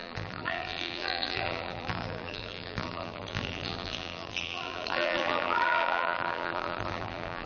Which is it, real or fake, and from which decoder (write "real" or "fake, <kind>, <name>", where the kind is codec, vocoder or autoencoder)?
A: fake, vocoder, BigVGAN v2